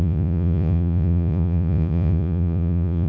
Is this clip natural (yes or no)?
no